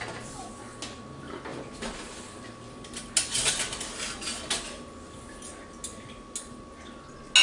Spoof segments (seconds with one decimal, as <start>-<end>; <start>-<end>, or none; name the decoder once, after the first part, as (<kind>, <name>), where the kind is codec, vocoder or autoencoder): none